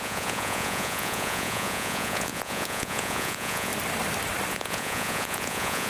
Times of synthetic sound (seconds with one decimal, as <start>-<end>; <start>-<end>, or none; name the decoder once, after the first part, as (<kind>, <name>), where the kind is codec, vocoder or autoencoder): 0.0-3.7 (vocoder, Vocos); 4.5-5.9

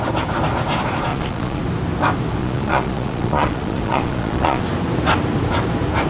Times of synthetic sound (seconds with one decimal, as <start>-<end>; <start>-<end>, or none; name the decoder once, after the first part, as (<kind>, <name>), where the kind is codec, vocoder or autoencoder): 1.1-1.6 (vocoder, Vocos); 2.4-4.6

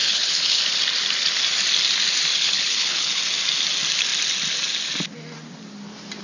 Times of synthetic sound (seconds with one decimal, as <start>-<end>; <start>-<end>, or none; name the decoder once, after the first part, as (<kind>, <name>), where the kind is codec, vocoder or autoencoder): 0.0-0.6 (codec, HILCodec); 2.3-3.2